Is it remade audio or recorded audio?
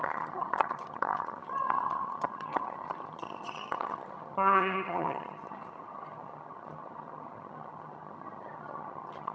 remade